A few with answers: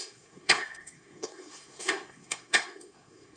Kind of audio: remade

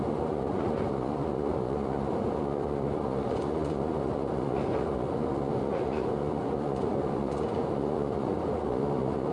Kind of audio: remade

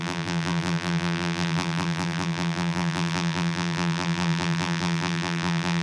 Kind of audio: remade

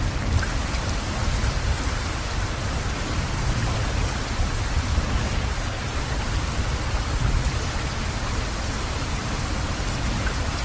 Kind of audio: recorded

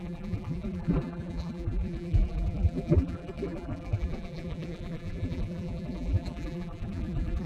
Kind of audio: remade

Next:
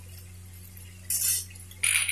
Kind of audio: recorded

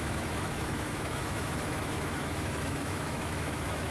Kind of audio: remade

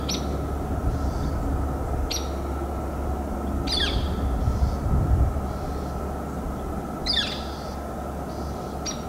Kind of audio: recorded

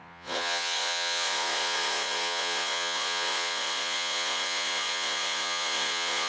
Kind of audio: remade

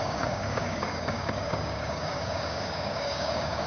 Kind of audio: remade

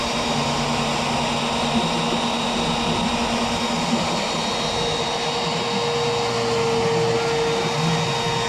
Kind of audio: recorded